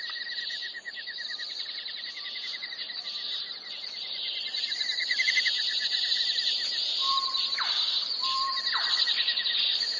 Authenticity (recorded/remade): remade